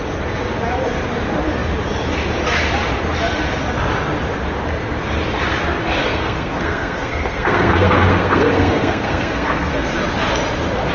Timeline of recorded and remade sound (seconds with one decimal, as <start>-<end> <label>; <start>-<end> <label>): 0.0-6.0 recorded; 6.0-10.0 remade; 10.0-10.9 recorded